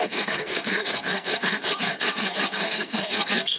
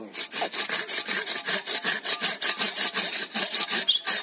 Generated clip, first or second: first